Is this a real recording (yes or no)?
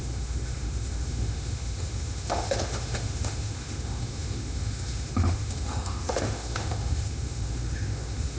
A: no